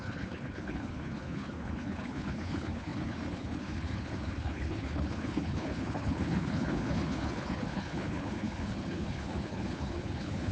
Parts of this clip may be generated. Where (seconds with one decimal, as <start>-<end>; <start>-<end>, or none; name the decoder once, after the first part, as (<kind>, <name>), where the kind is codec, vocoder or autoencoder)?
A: 0.0-10.5 (codec, HILCodec)